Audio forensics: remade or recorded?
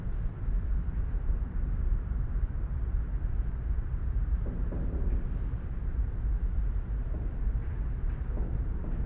remade